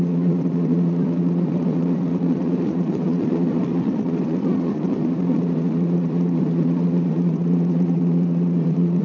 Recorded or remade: remade